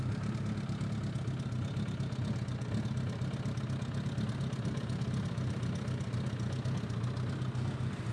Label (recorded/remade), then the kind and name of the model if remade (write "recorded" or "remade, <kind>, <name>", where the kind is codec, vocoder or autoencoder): recorded